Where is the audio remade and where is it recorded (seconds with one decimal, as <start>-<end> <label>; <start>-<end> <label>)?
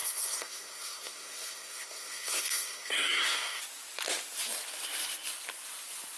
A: 0.0-3.6 remade; 3.6-6.2 recorded